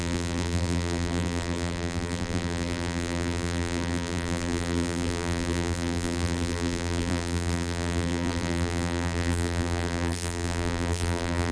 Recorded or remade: remade